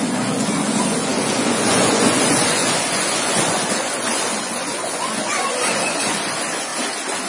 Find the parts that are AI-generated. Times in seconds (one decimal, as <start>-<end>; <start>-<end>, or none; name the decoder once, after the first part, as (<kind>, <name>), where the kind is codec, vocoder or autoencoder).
0.0-6.7 (vocoder, Vocos)